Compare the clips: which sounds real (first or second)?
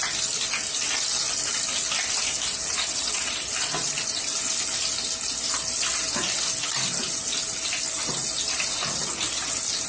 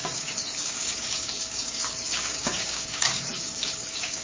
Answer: first